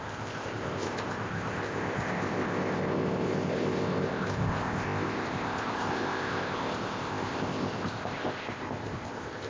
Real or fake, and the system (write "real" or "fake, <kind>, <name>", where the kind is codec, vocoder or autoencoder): fake, codec, ZipCodec